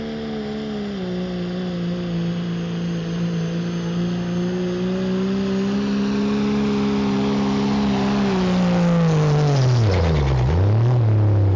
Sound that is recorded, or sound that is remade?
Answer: recorded